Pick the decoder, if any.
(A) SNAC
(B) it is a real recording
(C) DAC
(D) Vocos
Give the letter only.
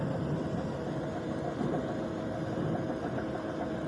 B